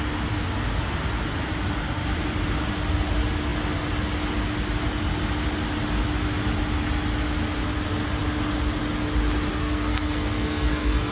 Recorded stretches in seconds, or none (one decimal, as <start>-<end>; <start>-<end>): 0.0-9.5